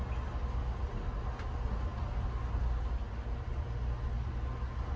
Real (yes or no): yes